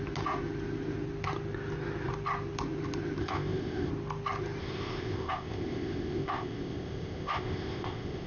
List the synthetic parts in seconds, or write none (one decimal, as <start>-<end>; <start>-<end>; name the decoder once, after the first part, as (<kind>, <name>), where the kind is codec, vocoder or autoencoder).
3.2-3.9 (codec, ZipCodec); 4.6-8.3